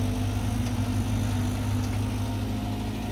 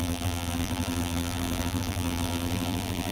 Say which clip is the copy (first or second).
second